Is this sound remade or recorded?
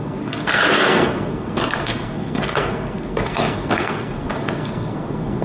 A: remade